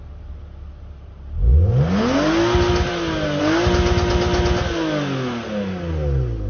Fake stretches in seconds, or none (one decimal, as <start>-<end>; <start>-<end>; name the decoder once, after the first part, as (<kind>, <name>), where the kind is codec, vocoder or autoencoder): none